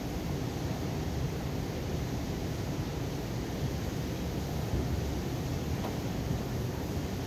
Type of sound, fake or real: real